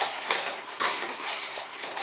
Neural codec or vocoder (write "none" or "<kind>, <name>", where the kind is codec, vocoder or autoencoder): codec, SNAC